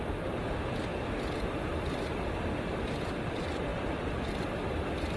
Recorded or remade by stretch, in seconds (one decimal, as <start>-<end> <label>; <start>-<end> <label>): 0.0-5.2 recorded